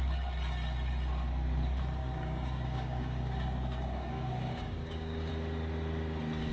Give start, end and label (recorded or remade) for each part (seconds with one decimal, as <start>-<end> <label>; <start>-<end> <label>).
0.0-2.0 recorded; 2.0-5.3 remade; 5.3-6.5 recorded